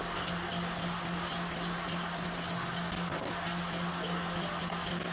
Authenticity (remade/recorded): recorded